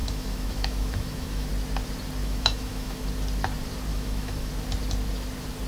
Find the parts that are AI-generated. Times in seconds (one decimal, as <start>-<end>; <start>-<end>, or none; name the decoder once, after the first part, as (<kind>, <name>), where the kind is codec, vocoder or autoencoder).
0.0-1.5 (autoencoder, DAC-VAE); 2.2-3.1; 3.9-4.5